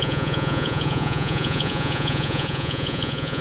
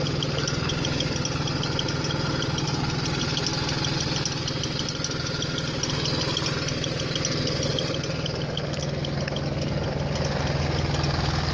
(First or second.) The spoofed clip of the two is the first